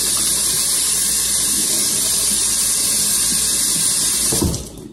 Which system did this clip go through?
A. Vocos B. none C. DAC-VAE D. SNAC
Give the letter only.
B